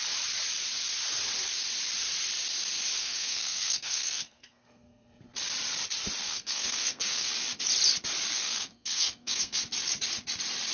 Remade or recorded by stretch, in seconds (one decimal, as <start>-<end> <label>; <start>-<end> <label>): 0.0-3.0 recorded; 3.0-5.2 remade; 5.2-6.2 recorded; 6.2-7.3 remade; 7.3-8.3 recorded; 8.3-9.6 remade; 9.6-10.7 recorded